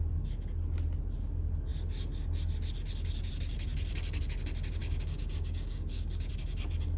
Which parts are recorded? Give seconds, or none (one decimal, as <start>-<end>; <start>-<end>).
0.0-4.8; 6.3-7.0